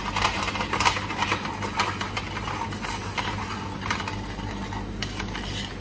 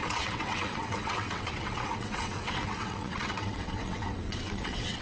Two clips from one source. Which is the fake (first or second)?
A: second